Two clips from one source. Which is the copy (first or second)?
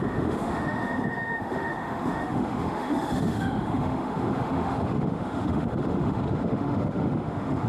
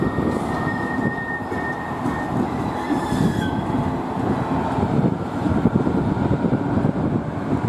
first